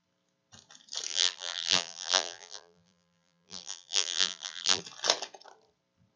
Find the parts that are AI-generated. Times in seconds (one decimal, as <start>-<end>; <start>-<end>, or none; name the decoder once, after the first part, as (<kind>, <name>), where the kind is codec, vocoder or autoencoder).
1.1-4.8 (vocoder, BigVGAN v2)

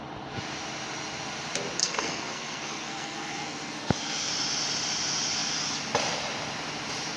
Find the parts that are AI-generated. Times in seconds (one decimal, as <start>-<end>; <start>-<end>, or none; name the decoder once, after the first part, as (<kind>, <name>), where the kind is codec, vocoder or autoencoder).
1.8-4.3 (codec, SNAC)